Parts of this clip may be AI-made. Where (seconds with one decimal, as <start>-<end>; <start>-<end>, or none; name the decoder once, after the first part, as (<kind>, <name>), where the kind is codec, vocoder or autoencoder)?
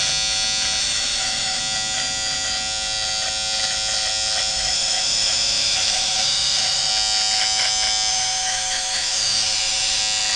0.8-1.6 (autoencoder, DAC-VAE); 4.5-6.9; 8.1-10.0